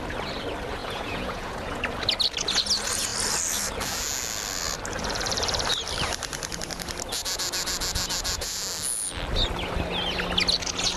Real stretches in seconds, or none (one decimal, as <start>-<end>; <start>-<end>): 0.0-0.8; 1.8-11.0